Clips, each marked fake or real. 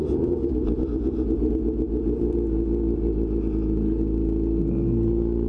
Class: real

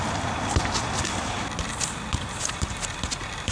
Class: real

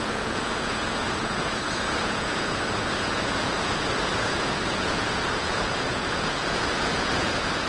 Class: fake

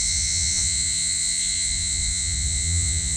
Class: fake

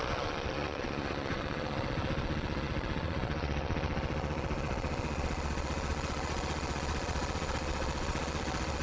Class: fake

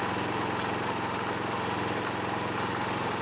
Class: real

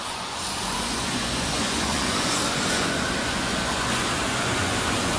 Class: fake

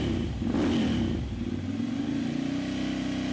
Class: real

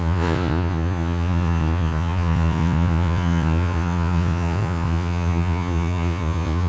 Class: fake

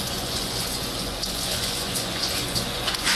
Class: fake